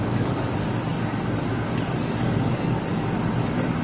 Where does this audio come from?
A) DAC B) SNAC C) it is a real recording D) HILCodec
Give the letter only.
A